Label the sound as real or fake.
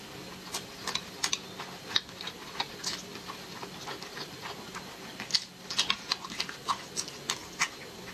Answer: real